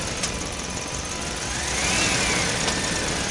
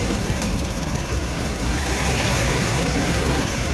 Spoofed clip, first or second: second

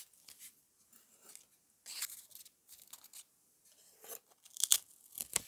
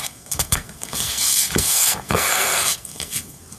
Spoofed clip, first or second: second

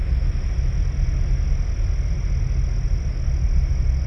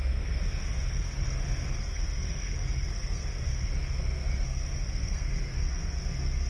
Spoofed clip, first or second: second